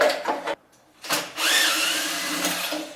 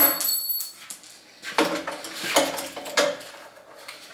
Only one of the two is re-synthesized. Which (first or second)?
first